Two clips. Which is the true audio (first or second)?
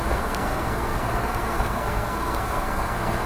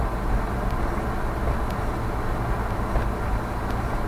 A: second